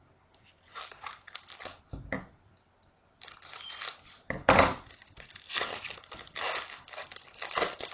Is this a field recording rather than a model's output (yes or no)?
yes